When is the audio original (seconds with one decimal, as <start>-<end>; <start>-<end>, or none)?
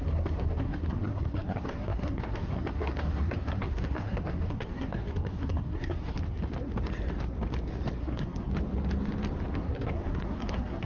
6.2-8.0; 8.5-9.5